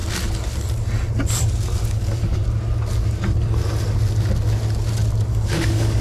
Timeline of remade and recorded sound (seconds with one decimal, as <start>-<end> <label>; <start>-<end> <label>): 0.0-1.9 recorded; 1.9-2.4 remade; 2.4-5.3 recorded; 5.3-6.0 remade